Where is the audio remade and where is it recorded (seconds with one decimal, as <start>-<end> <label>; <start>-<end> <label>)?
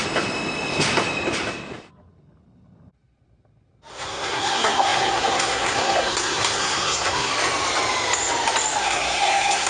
0.0-3.9 recorded; 3.9-7.3 remade; 7.3-8.8 recorded; 8.8-9.7 remade